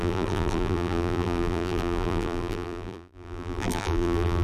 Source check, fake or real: fake